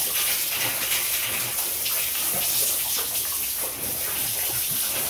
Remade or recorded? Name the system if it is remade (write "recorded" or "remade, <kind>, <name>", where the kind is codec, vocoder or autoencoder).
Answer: recorded